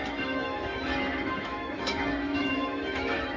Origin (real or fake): fake